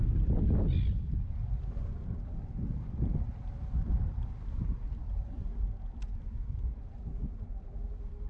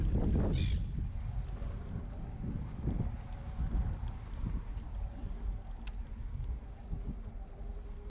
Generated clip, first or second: first